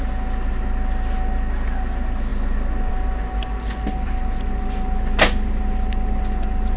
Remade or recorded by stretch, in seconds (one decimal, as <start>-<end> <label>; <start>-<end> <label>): 0.0-6.8 recorded